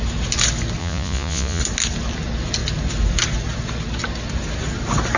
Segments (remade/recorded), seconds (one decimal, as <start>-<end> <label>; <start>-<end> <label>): 0.0-0.8 recorded; 0.8-1.6 remade; 1.6-5.2 recorded